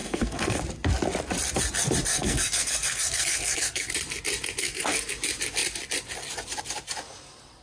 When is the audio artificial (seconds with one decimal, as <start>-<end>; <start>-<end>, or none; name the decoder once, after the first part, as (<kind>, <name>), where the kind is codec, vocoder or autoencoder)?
0.0-0.6 (codec, SNAC); 2.1-3.9; 4.6-5.1